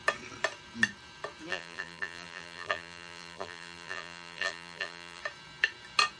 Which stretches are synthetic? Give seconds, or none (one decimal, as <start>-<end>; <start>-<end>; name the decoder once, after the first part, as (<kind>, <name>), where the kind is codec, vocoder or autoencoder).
1.5-5.2 (vocoder, BigVGAN v2)